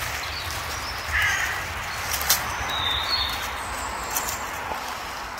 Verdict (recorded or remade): recorded